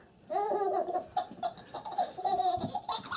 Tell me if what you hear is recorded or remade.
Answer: remade